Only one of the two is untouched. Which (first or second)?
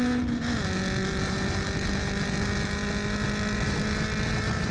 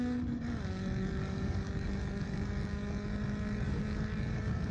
first